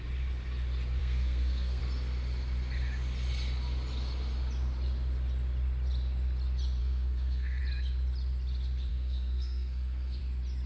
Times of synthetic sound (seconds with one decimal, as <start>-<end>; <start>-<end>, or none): 1.0-1.8; 6.8-7.6; 8.9-10.2